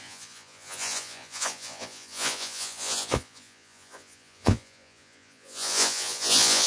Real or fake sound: fake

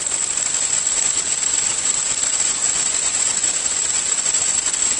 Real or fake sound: fake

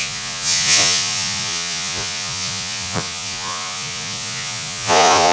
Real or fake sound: fake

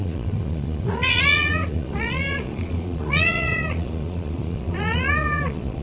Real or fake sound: fake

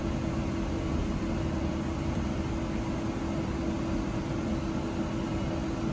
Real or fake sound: real